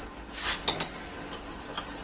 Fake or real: real